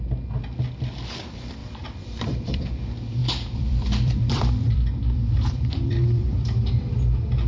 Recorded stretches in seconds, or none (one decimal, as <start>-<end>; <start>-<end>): 0.0-1.6; 2.6-3.2; 6.7-7.5